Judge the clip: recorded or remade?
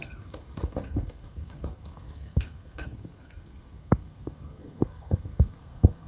remade